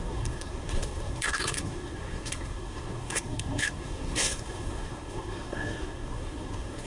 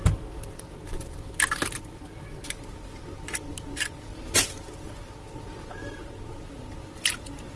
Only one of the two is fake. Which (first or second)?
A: first